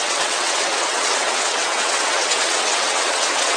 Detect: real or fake fake